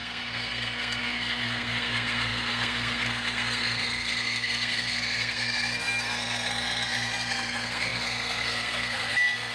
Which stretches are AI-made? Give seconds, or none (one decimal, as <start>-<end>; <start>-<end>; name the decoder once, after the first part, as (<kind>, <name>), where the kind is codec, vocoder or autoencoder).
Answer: 0.0-9.5 (codec, SNAC)